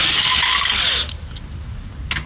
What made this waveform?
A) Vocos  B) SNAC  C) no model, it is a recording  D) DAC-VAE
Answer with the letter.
C